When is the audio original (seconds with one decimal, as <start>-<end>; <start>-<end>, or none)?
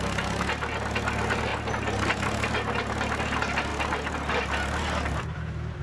0.0-5.8